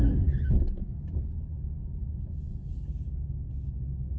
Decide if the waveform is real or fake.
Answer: real